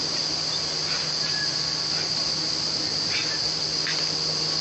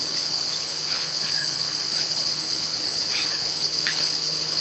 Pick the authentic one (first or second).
first